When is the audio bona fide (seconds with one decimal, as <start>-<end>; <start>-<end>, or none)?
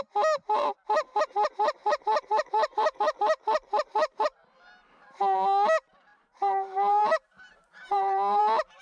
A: 0.0-1.8; 3.0-6.1; 8.4-8.8